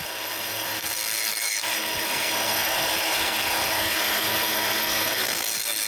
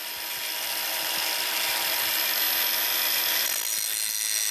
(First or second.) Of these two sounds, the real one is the second